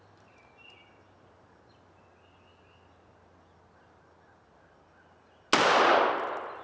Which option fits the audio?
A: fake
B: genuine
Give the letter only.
B